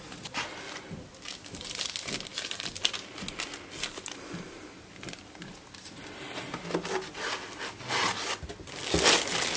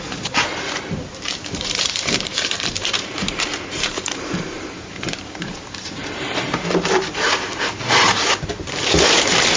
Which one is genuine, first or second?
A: first